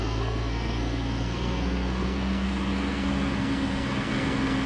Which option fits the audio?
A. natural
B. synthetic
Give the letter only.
B